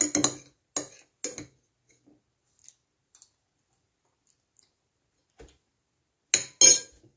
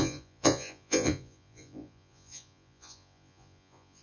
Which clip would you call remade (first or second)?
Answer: second